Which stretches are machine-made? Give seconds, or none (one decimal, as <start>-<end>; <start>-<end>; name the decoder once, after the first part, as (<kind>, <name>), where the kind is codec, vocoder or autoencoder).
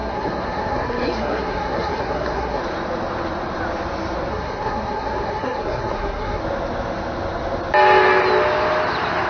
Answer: 0.0-2.6 (codec, SNAC); 4.3-6.4